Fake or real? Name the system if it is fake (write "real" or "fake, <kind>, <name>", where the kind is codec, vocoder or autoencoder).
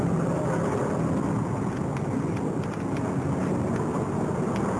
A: real